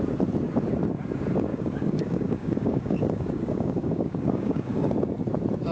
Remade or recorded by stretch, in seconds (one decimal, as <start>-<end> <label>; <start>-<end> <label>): 0.0-1.5 recorded; 1.5-4.9 remade; 4.9-5.7 recorded